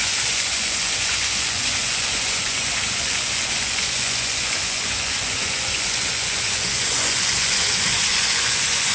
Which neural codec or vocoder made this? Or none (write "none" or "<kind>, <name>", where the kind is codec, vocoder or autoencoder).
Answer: vocoder, Vocos